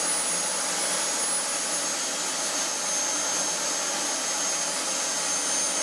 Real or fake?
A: real